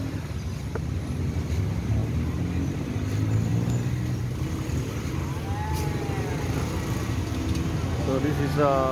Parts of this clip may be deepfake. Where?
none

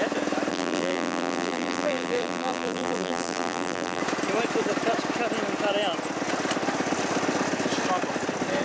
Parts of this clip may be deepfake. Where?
0.5-4.0 (vocoder, BigVGAN v2)

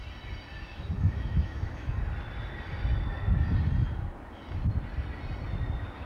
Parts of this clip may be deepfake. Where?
0.7-2.0 (autoencoder, DAC-VAE)